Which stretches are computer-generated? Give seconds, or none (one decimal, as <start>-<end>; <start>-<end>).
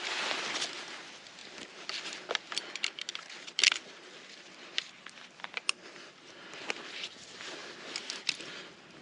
none